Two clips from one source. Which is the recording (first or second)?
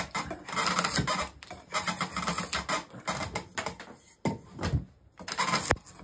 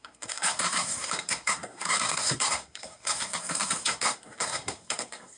first